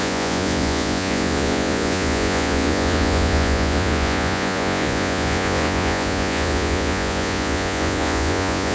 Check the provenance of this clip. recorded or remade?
remade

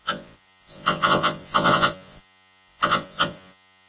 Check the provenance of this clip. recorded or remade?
remade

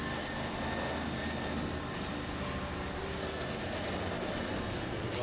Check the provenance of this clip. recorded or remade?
recorded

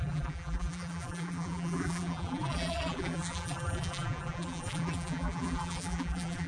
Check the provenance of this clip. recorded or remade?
remade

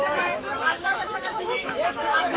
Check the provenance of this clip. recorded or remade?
remade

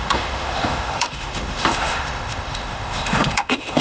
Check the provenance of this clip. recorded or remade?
remade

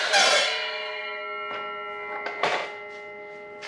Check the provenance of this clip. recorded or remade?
recorded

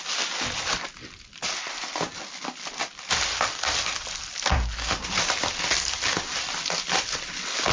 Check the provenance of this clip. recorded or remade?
recorded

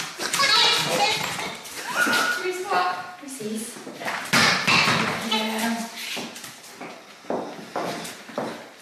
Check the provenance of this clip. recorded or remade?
recorded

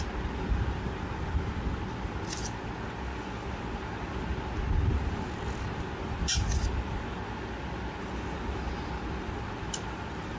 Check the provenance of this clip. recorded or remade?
recorded